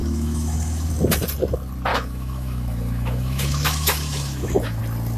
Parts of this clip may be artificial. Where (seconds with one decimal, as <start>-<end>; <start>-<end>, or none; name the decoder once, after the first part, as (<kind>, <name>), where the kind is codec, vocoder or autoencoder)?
0.0-0.9 (autoencoder, DAC-VAE); 1.9-4.8